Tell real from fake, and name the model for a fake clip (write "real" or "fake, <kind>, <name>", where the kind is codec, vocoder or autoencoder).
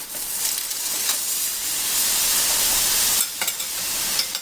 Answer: real